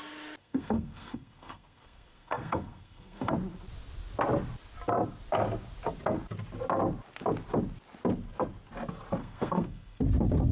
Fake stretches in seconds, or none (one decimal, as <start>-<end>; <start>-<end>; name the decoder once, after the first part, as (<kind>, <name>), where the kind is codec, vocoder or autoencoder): 0.4-3.3 (codec, SNAC); 9.2-10.0